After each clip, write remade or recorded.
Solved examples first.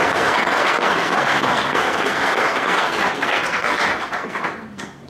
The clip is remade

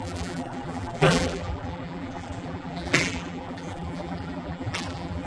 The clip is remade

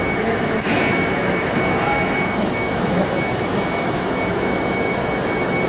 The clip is remade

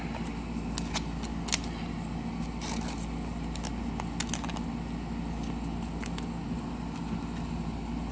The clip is recorded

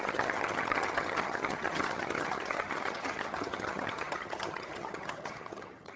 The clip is remade